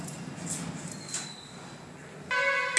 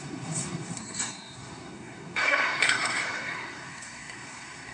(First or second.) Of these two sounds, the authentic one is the first